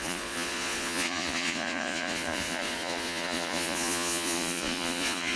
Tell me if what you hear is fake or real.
fake